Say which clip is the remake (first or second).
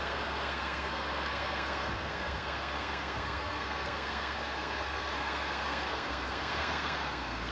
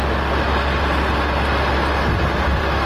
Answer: first